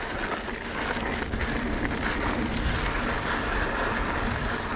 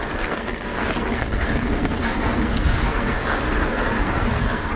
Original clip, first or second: first